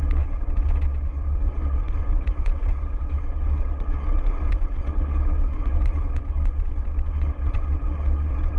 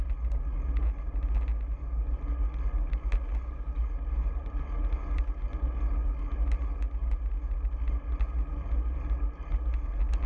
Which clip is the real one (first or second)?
second